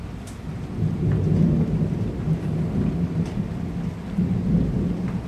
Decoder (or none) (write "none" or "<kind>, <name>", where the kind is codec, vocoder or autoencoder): none